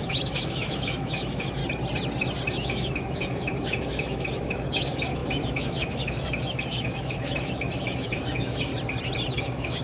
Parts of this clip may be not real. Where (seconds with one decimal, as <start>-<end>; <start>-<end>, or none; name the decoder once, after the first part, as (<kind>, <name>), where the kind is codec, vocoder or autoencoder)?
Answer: 0.0-1.6 (autoencoder, DAC-VAE); 2.5-8.7; 9.3-9.8